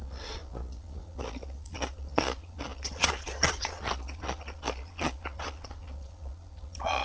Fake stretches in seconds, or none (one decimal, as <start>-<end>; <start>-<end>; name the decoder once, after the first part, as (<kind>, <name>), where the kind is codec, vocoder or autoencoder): 0.0-7.0 (vocoder, Vocos)